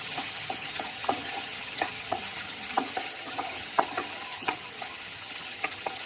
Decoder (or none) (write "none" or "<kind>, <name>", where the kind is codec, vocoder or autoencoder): vocoder, HiFi-GAN